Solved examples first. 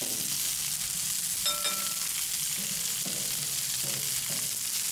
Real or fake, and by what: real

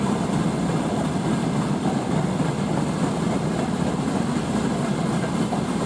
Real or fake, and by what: real